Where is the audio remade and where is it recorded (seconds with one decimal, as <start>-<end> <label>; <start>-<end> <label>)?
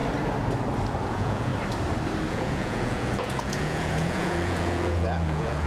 0.0-1.1 recorded; 1.1-1.5 remade; 1.5-2.3 recorded; 2.3-5.7 remade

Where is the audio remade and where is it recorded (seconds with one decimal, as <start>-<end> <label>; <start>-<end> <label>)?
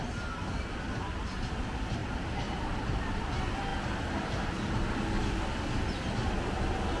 0.0-7.0 recorded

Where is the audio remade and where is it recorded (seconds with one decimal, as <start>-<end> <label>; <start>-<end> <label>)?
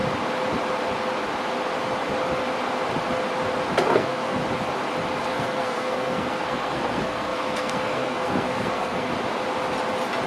0.0-3.9 recorded; 3.9-4.4 remade; 4.4-5.3 recorded; 5.3-9.1 remade; 9.1-10.3 recorded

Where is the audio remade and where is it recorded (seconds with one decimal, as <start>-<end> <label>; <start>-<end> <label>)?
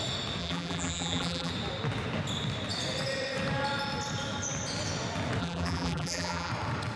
0.0-0.4 recorded; 0.4-1.5 remade; 1.5-5.4 recorded; 5.4-6.5 remade; 6.5-7.0 recorded